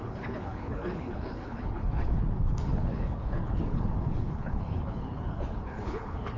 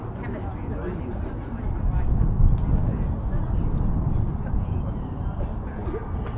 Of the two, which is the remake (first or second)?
first